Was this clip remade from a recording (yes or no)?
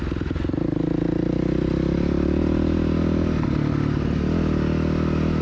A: no